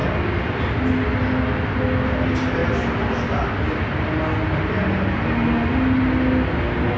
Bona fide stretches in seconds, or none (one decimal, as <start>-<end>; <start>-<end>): 0.0-7.0